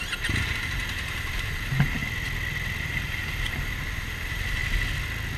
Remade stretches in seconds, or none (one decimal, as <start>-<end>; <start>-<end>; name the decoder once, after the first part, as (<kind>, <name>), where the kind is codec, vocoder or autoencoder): 0.0-2.0 (vocoder, BigVGAN v2); 2.8-4.6